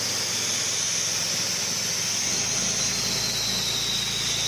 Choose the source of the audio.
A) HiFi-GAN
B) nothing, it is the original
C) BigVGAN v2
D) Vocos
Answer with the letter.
B